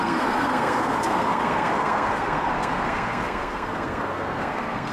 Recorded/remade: remade